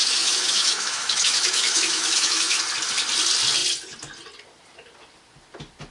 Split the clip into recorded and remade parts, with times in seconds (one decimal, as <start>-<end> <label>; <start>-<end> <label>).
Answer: 0.0-2.6 remade; 2.6-5.9 recorded